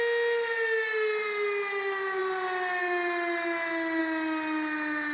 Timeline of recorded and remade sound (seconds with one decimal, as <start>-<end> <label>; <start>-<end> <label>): 0.0-5.1 recorded